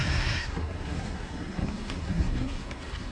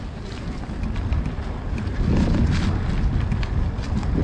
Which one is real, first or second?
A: second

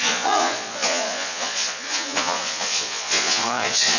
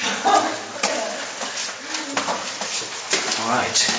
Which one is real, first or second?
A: second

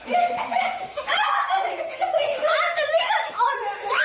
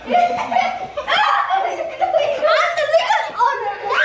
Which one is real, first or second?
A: second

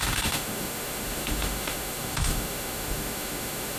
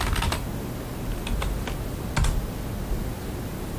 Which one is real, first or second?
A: second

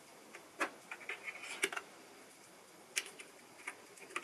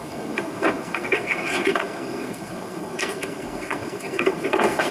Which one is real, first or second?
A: first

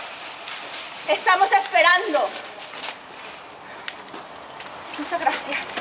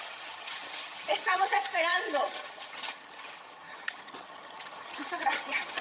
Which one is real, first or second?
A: first